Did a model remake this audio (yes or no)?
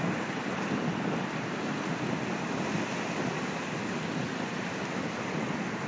no